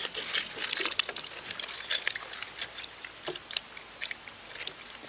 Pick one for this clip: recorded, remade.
recorded